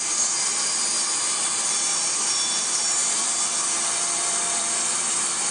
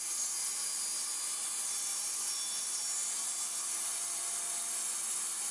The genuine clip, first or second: second